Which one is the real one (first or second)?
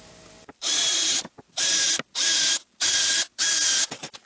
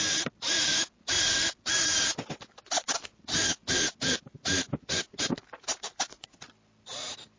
second